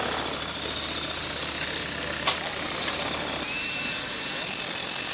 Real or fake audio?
real